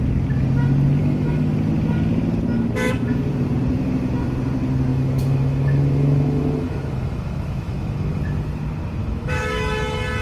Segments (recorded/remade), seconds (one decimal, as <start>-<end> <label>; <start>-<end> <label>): 0.0-1.0 recorded; 1.0-1.5 remade; 1.5-4.9 recorded; 4.9-8.2 remade; 8.2-9.0 recorded; 9.0-9.7 remade; 9.7-10.2 recorded